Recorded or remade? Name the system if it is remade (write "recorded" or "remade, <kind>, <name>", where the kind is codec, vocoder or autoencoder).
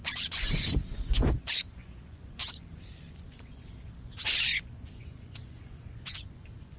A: remade, vocoder, Vocos